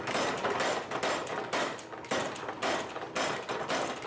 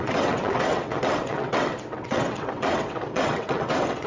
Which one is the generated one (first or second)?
second